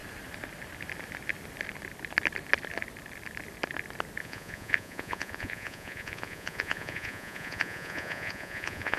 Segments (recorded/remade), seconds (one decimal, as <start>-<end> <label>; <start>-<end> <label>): 0.0-4.2 recorded; 4.2-9.0 remade